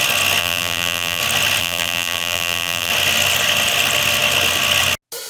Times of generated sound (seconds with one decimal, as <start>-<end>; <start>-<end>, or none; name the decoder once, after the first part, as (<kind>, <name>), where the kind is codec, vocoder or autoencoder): 0.4-1.2 (vocoder, BigVGAN v2); 1.6-2.9